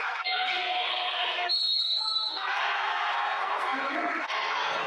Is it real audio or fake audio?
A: fake